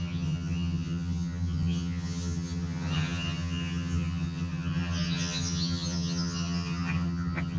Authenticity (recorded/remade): remade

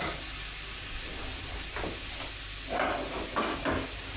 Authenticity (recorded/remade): recorded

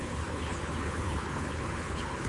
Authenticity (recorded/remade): remade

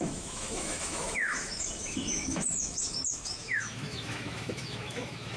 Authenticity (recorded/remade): remade